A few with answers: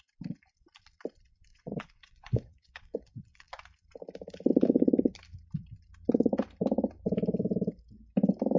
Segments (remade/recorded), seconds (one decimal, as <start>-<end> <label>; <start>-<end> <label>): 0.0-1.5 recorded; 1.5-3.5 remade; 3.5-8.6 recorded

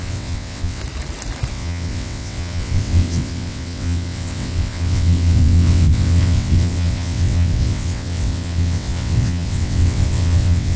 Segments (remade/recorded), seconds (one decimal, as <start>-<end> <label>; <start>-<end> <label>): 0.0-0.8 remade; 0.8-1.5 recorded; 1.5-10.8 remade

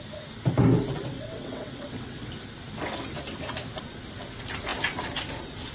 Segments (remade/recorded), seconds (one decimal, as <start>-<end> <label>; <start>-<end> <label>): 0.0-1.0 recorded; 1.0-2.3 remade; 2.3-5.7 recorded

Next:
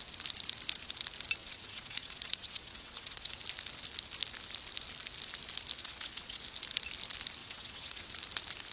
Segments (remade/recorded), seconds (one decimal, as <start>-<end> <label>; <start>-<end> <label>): 0.0-1.4 recorded; 1.4-3.4 remade; 3.4-5.8 recorded; 5.8-6.4 remade; 6.4-7.4 recorded; 7.4-8.1 remade; 8.1-8.7 recorded

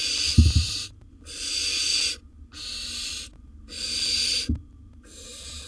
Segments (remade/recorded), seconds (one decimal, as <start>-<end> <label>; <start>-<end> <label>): 0.0-5.7 recorded

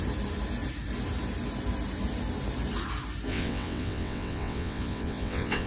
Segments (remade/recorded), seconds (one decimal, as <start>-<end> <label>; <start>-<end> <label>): 0.0-3.3 recorded; 3.3-5.7 remade

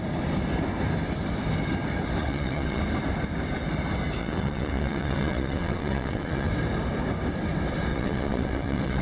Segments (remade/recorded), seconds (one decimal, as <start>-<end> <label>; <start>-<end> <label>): 0.0-2.2 recorded; 2.2-2.8 remade; 2.8-4.2 recorded; 4.2-6.5 remade; 6.5-7.9 recorded; 7.9-9.0 remade